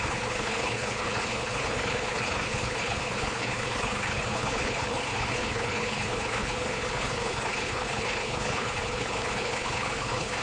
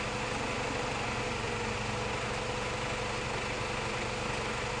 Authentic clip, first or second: second